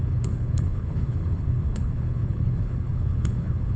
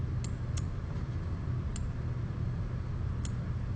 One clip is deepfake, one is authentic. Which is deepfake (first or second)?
first